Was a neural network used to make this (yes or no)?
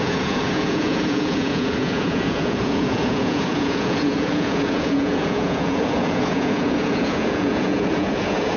yes